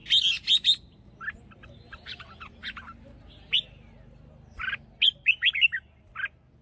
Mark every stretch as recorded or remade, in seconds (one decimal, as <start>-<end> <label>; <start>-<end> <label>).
0.0-6.6 recorded